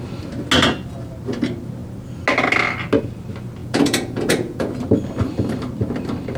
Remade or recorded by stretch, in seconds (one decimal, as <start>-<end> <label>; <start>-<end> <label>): 0.0-3.6 recorded; 3.6-4.7 remade; 4.7-6.4 recorded